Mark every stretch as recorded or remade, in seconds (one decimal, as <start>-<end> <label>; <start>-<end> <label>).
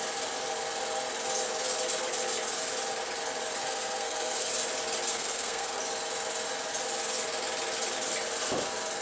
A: 0.0-3.6 recorded; 3.6-4.5 remade; 4.5-5.1 recorded; 5.1-5.8 remade; 5.8-9.0 recorded